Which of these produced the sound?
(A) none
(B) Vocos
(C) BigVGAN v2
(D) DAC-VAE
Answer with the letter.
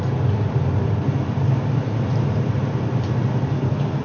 A